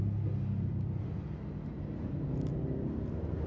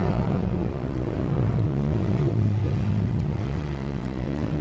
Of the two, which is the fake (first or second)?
second